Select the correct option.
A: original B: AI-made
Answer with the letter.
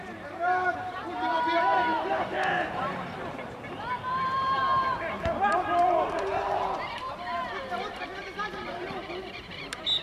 B